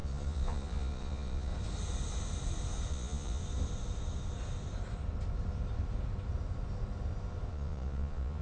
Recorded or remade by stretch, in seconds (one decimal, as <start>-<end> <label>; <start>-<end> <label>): 0.0-1.5 remade; 1.5-2.9 recorded; 2.9-3.4 remade; 3.4-7.5 recorded; 7.5-8.4 remade